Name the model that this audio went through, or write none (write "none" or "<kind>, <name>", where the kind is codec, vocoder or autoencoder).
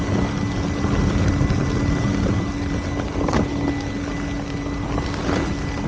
none